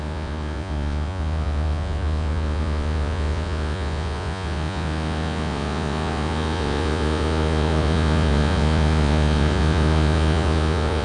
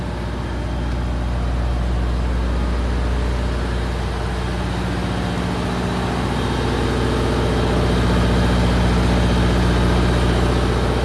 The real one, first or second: second